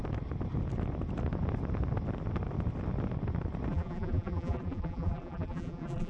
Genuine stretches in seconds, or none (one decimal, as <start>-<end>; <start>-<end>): 0.0-3.7

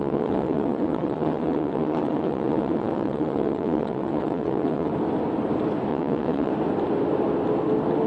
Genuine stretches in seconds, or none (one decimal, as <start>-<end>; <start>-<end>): 4.9-5.9; 6.5-8.1

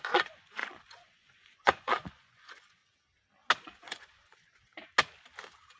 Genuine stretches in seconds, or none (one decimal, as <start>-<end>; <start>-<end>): 2.8-3.6; 4.7-5.8

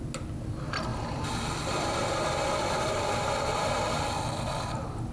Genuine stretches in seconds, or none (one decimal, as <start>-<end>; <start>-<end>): 0.0-0.9; 4.0-5.1

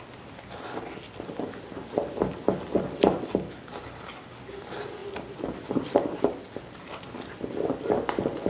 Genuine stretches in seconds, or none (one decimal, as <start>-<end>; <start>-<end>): 0.0-8.5

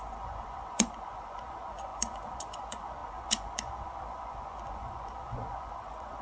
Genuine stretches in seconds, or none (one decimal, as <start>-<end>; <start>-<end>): none